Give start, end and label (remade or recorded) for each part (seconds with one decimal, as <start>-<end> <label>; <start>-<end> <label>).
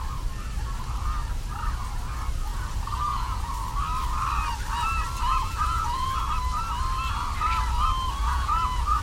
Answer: 0.0-2.5 recorded; 2.5-3.5 remade; 3.5-5.3 recorded; 5.3-6.2 remade; 6.2-8.2 recorded; 8.2-9.0 remade